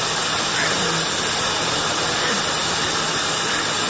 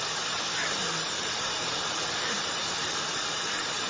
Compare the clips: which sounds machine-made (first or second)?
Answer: second